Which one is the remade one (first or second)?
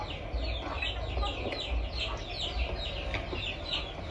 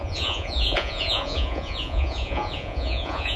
second